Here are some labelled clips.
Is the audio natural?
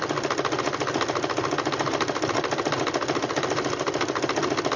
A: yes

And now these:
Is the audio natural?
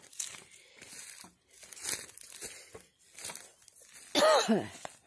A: yes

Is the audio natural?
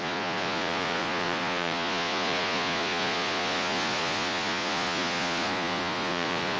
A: no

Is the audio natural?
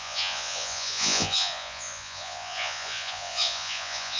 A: no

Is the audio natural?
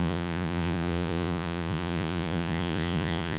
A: no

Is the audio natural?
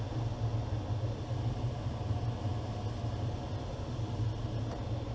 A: yes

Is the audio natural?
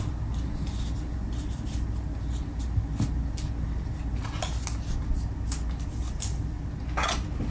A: yes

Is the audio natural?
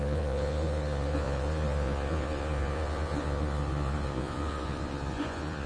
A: no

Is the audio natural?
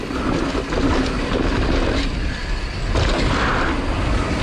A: yes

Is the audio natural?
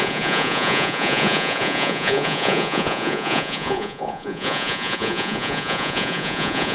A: no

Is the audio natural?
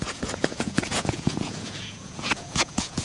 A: no